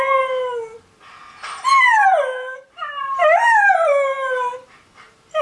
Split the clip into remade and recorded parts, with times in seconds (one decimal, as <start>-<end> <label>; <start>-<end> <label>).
0.0-1.7 recorded; 1.7-4.5 remade; 4.5-5.4 recorded